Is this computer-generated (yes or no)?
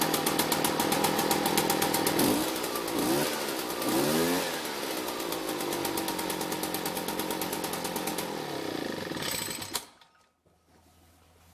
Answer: no